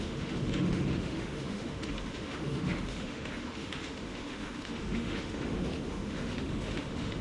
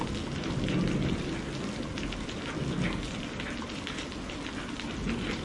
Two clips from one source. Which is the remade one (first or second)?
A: first